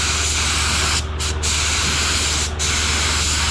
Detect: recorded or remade recorded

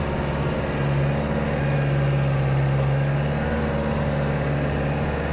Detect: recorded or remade recorded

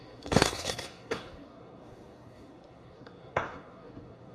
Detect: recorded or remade remade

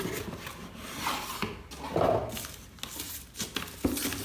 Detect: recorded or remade recorded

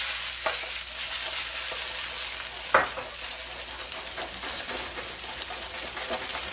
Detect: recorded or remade recorded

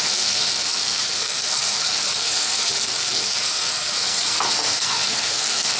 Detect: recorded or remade remade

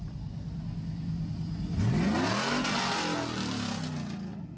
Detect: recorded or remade recorded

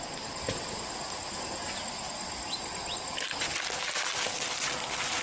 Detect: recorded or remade recorded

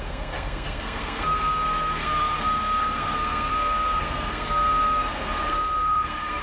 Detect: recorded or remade remade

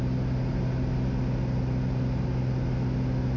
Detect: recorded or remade recorded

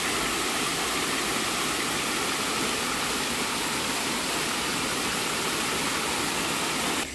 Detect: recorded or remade recorded